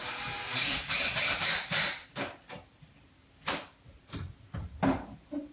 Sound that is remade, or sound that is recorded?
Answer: remade